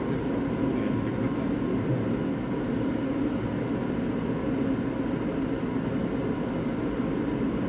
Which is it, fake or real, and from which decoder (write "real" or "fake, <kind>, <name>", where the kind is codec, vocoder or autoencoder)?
real